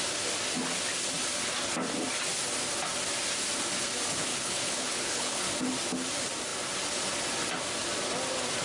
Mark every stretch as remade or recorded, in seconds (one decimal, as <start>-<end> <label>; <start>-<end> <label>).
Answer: 0.0-4.3 recorded; 4.3-5.4 remade; 5.4-8.6 recorded